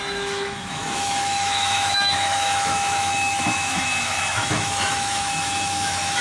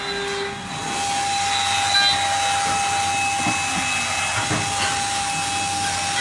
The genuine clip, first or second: second